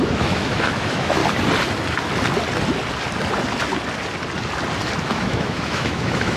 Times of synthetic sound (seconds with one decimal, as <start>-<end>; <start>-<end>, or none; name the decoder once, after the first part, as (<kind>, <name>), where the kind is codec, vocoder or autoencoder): 0.0-1.2 (autoencoder, DAC-VAE); 5.0-6.4